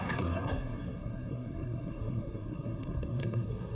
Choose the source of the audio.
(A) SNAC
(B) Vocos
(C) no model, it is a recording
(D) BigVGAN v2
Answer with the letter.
A